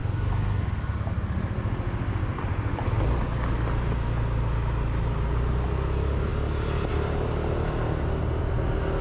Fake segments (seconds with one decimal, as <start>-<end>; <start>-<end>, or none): 6.3-6.9